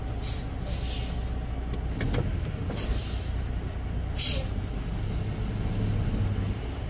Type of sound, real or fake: real